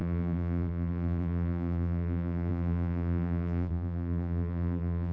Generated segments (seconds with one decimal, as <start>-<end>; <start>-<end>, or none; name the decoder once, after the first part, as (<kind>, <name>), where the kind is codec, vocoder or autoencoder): 0.0-5.1 (vocoder, BigVGAN v2)